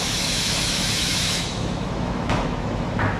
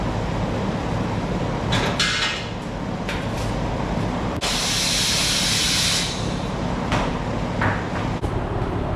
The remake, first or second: first